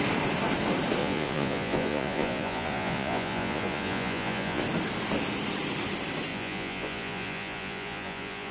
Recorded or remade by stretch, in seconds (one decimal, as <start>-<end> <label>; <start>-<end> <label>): 0.0-1.0 recorded; 1.0-4.6 remade; 4.6-6.3 recorded; 6.3-8.5 remade